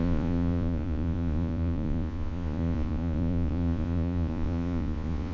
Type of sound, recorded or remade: remade